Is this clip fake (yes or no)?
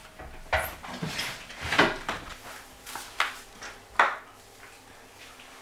no